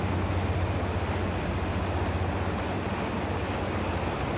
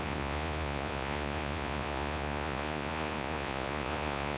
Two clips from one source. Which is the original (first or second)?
first